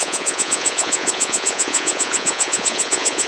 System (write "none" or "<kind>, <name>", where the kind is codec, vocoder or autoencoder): vocoder, Vocos